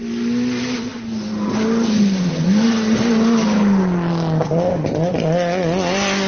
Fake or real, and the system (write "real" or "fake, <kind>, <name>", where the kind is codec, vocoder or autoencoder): real